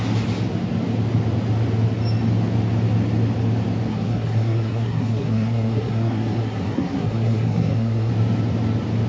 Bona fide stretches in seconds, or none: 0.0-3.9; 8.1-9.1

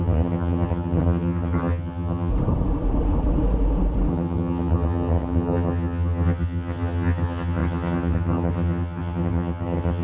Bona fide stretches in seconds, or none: 2.3-4.1

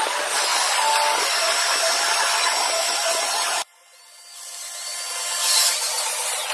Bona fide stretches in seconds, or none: 0.0-6.5

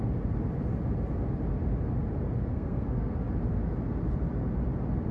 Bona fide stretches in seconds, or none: 0.0-2.5; 3.1-5.1

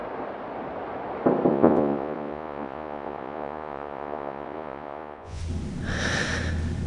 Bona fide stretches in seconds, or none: 0.0-1.5; 5.4-6.9